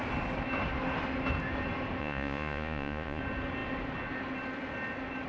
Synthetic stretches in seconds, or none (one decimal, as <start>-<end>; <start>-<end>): 2.0-3.2